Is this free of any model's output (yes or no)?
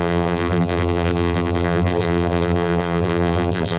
no